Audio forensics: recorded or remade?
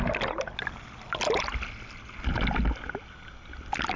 recorded